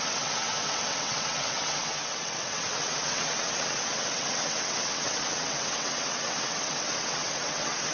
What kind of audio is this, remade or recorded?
remade